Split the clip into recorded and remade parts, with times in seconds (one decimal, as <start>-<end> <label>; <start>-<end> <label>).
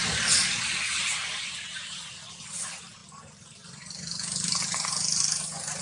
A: 0.0-5.8 recorded